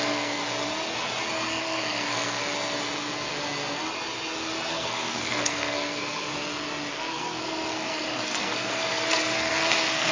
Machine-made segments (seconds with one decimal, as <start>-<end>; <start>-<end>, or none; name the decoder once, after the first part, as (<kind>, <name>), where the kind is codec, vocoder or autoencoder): 0.0-0.4 (codec, SNAC); 1.6-2.4; 4.7-6.3; 6.9-10.1